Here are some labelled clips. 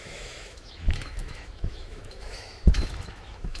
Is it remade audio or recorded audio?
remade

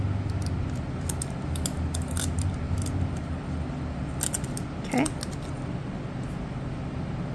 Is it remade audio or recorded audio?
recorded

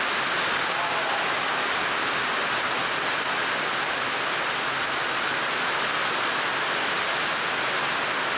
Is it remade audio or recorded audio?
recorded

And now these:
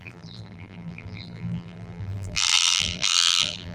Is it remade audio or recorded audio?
remade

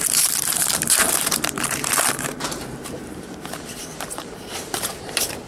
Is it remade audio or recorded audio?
remade